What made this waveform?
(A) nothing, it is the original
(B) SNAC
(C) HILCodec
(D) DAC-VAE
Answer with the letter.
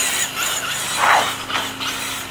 A